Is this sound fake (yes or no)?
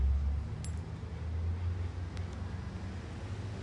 no